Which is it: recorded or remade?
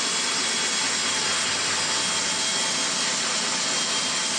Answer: recorded